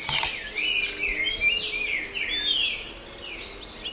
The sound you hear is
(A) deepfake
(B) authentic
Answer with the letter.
B